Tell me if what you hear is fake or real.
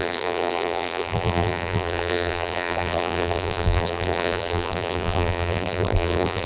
fake